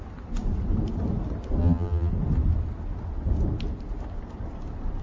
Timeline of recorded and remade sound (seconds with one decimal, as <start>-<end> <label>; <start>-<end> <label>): 0.0-1.6 recorded; 1.6-2.1 remade; 2.1-5.0 recorded